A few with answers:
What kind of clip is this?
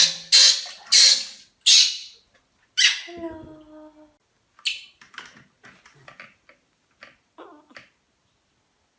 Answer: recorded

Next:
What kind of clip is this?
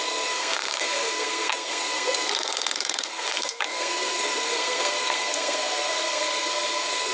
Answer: remade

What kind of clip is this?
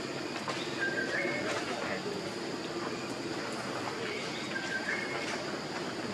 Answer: recorded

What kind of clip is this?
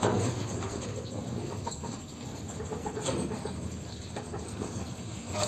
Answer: remade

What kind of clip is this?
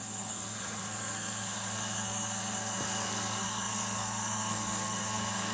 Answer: remade